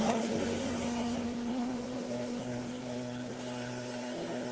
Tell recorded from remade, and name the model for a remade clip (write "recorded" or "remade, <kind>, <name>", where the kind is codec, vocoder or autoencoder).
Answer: remade, codec, SNAC